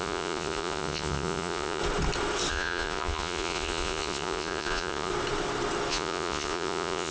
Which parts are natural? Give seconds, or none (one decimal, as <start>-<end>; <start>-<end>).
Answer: 1.8-2.5; 5.1-5.9